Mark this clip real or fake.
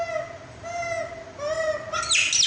real